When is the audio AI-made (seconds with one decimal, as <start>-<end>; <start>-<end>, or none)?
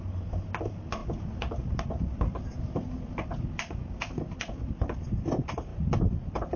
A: none